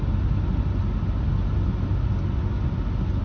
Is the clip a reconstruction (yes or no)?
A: no